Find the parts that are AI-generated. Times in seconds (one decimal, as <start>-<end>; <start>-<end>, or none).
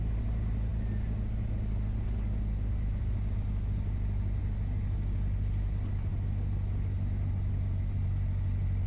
none